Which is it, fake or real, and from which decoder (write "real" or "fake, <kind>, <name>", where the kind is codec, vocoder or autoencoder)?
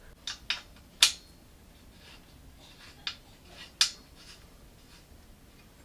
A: real